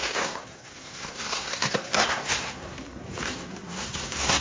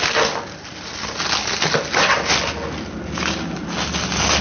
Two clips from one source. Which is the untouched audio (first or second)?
second